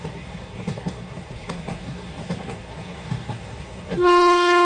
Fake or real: fake